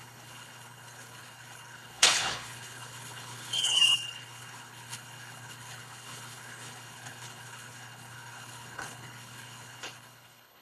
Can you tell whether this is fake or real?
fake